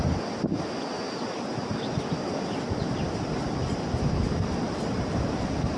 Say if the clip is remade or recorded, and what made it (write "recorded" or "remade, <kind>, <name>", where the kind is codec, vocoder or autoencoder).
recorded